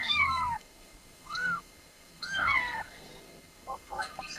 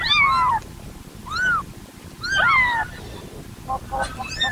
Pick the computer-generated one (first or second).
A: first